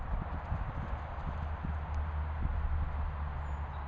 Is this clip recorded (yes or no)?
yes